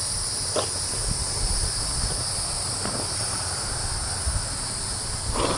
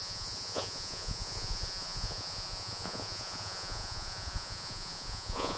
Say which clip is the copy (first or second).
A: second